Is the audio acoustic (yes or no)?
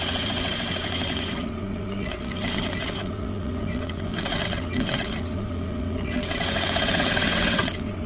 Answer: no